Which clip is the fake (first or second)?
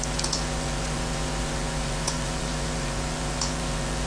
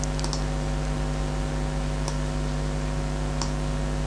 first